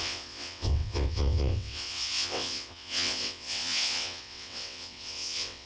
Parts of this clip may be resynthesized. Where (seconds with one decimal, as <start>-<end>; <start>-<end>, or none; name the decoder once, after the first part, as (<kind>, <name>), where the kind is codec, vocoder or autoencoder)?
0.0-5.7 (vocoder, WaveNeXt)